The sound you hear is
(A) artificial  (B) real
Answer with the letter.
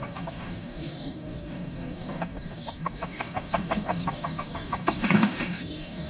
A